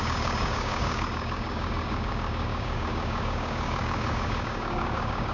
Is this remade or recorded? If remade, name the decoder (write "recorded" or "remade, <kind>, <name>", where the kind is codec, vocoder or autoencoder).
remade, codec, DAC